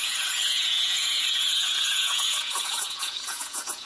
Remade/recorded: remade